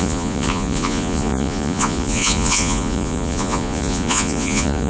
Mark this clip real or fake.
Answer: fake